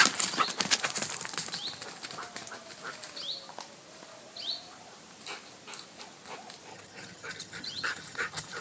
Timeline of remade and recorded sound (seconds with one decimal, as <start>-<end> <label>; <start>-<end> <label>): 0.0-6.7 recorded; 6.7-8.6 remade